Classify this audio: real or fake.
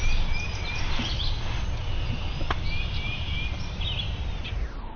real